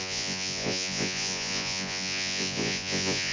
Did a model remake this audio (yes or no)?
yes